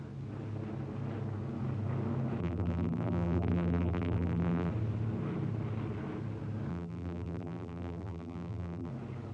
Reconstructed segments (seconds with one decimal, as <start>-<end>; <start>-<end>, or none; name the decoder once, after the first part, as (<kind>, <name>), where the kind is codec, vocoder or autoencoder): 2.4-4.7 (vocoder, BigVGAN v2); 6.7-8.9